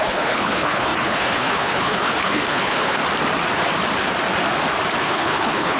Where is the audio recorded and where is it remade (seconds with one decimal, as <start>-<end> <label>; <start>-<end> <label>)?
0.0-3.0 remade; 3.0-5.0 recorded; 5.0-5.8 remade